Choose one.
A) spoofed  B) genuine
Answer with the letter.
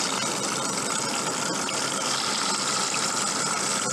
B